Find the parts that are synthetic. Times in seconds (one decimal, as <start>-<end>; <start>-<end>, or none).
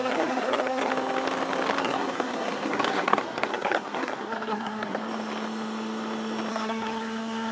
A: 0.0-0.9; 1.8-5.0; 6.5-7.5